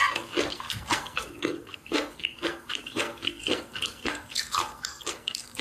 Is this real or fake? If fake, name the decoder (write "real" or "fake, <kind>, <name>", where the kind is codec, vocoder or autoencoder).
fake, codec, SNAC